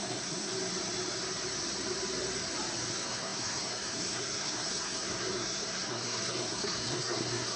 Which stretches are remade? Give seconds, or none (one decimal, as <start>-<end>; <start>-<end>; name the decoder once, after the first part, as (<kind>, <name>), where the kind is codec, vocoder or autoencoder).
0.0-0.5 (codec, SNAC); 2.9-7.6